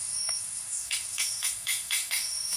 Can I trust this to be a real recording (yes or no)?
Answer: no